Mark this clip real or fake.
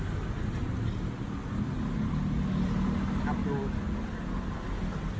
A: real